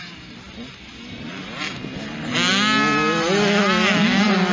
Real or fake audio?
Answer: real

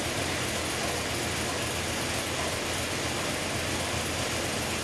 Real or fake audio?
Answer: real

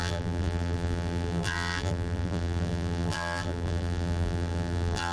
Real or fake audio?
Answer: fake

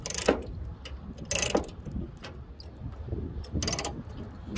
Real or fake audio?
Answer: real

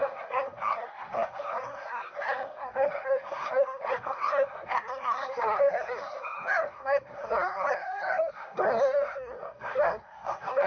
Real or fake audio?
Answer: fake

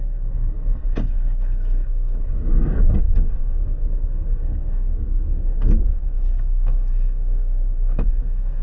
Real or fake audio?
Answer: fake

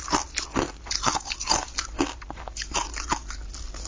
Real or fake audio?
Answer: real